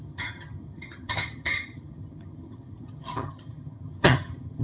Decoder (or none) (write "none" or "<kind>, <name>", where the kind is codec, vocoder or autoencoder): vocoder, HiFi-GAN